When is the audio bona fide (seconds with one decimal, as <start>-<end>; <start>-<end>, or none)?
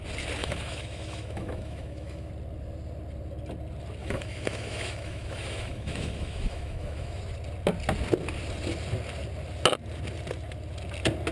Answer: 0.0-0.4; 2.3-4.0; 7.2-11.3